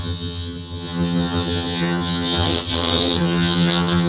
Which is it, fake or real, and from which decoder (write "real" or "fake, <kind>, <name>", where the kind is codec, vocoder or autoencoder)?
fake, vocoder, HiFi-GAN